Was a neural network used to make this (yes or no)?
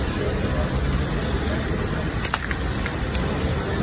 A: yes